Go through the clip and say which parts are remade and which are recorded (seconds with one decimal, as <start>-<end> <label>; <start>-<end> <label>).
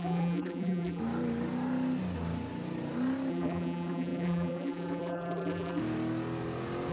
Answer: 0.0-1.0 remade; 1.0-3.3 recorded; 3.3-5.8 remade; 5.8-6.9 recorded